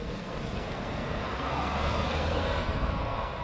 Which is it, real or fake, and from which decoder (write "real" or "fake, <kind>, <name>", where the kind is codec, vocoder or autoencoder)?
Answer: fake, codec, SNAC